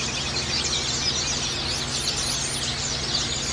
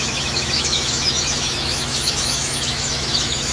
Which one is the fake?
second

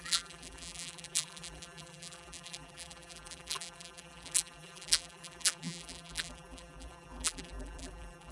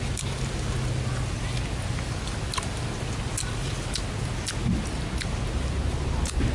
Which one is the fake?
first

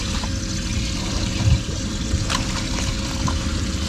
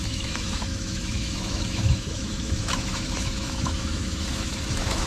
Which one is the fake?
second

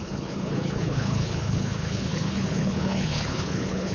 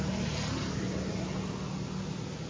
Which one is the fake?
first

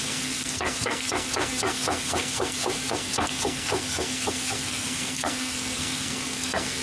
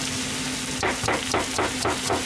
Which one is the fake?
first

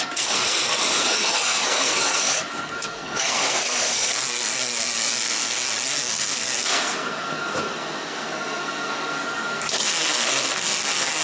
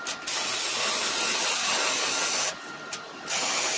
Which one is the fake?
first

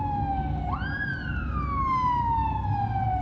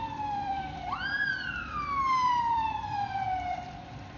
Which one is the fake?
second